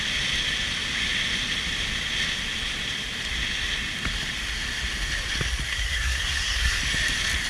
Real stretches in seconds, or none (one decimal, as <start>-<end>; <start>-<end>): 0.0-5.7; 6.8-7.5